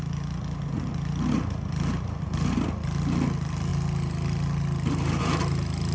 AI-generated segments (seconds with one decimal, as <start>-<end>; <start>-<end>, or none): none